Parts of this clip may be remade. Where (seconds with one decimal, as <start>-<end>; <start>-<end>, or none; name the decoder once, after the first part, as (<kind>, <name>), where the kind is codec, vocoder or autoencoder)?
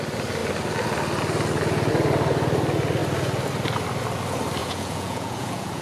4.6-5.8 (vocoder, Vocos)